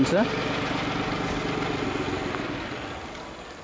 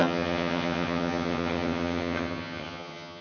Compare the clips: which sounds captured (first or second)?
first